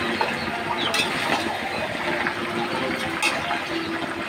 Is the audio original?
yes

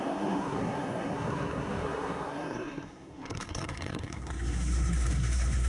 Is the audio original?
no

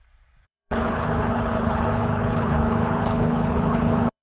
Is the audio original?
no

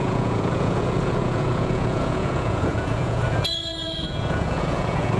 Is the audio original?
no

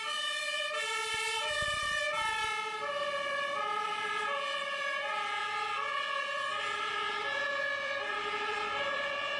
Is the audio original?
no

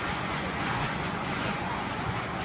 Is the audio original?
no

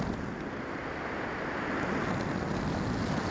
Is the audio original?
yes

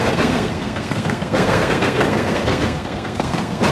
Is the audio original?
no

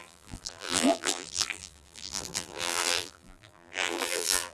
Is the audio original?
no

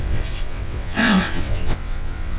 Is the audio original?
no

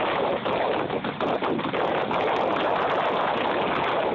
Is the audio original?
yes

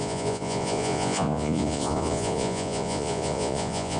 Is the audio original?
no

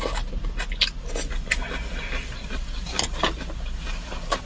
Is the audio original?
yes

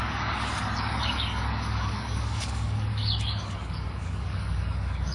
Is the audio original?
no